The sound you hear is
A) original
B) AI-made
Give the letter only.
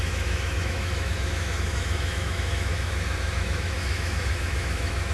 B